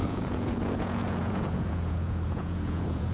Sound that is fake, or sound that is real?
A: fake